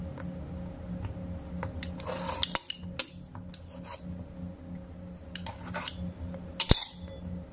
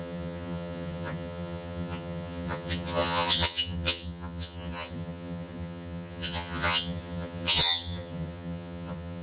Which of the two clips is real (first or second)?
first